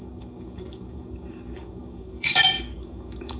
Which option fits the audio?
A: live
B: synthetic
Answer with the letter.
B